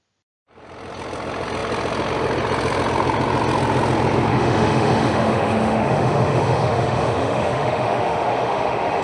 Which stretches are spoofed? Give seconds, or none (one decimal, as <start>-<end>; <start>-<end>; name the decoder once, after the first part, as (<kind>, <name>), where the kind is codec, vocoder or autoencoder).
4.3-9.0 (autoencoder, DAC-VAE)